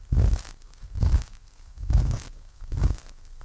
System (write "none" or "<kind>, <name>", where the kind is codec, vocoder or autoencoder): codec, SNAC